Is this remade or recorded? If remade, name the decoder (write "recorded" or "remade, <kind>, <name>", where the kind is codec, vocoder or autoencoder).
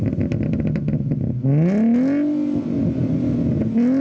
recorded